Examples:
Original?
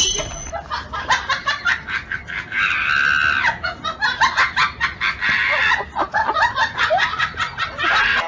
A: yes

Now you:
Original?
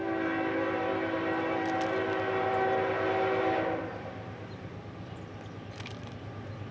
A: yes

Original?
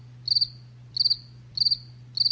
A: yes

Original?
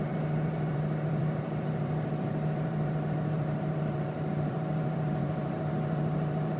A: no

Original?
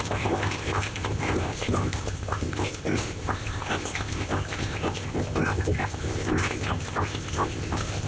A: no